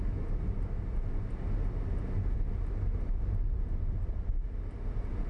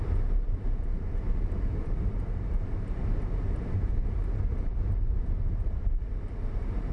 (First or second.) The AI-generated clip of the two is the second